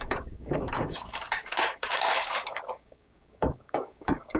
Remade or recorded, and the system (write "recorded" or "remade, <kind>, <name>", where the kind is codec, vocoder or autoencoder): remade, codec, DAC